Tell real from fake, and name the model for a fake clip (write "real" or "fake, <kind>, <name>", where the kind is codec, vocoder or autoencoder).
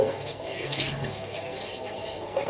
fake, codec, SNAC